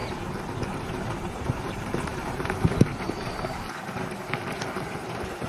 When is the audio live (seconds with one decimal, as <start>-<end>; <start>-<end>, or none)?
0.0-0.9